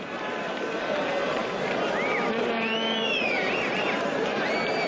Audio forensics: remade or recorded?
recorded